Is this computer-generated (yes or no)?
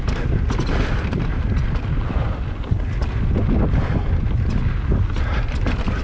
no